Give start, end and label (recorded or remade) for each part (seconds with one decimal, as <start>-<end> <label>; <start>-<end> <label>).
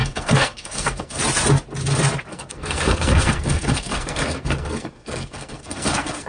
0.0-1.2 remade; 1.2-2.3 recorded; 2.3-6.3 remade